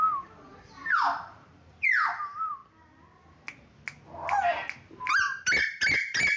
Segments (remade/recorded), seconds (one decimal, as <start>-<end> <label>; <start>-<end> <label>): 0.0-2.6 remade; 2.6-4.9 recorded; 4.9-6.4 remade